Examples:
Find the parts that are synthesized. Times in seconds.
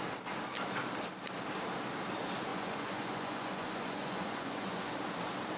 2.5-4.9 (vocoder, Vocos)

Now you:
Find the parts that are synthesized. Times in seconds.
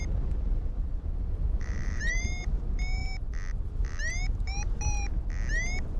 0.9-2.6 (vocoder, BigVGAN v2)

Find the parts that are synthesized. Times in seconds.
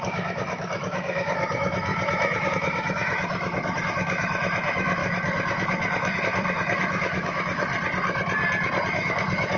0.0-7.7 (autoencoder, DAC-VAE); 8.9-9.6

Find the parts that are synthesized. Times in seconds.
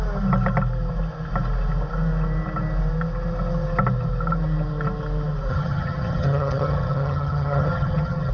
5.5-8.3 (vocoder, HiFi-GAN)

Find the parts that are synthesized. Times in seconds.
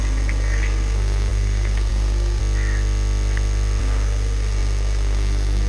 0.0-2.4 (codec, SNAC); 3.8-5.7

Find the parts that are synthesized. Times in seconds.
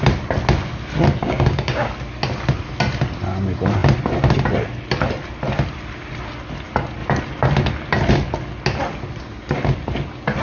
1.2-1.9 (codec, DAC)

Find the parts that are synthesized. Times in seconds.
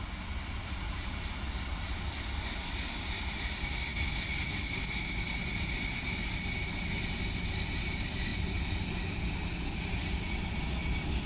none